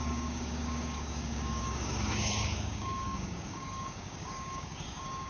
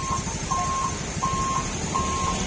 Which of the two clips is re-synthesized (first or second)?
first